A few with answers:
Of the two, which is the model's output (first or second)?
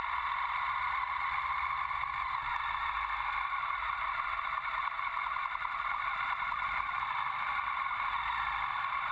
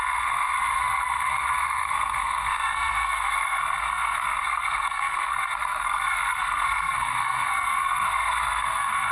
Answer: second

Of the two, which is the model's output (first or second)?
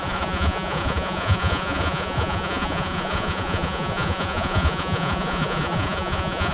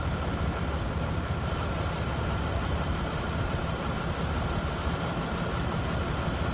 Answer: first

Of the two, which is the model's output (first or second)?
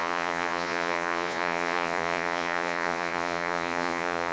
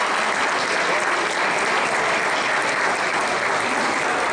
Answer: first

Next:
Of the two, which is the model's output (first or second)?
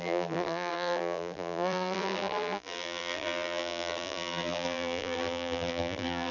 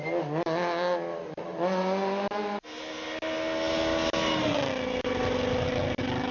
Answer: first